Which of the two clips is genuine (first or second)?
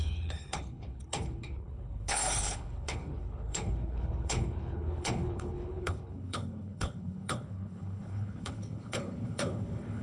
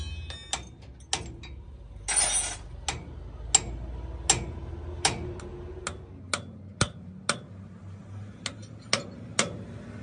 second